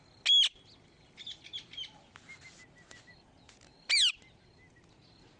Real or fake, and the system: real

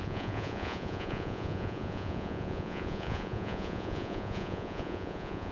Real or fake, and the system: fake, vocoder, Vocos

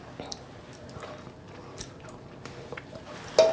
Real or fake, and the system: real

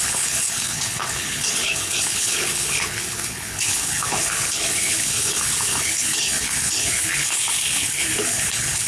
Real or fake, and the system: fake, codec, HILCodec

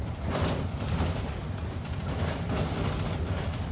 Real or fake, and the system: real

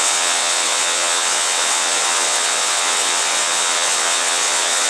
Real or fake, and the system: fake, vocoder, WaveNeXt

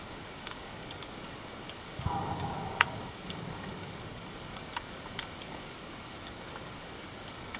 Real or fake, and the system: fake, codec, DAC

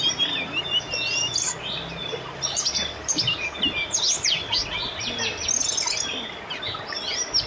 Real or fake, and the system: real